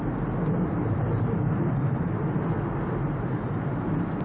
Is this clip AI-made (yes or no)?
no